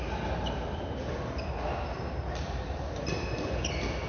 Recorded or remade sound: recorded